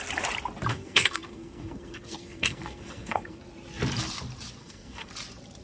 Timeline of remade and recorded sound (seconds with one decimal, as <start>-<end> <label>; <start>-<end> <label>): 0.0-0.7 recorded; 0.7-3.4 remade; 3.4-4.6 recorded; 4.6-5.1 remade; 5.1-5.6 recorded